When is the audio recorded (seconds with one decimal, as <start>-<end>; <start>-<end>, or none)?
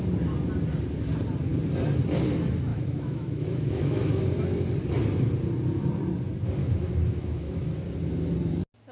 0.0-2.7; 4.2-6.6; 7.6-8.9